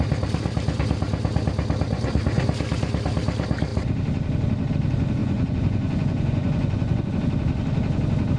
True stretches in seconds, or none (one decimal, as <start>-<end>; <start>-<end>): 0.0-5.2; 7.1-8.4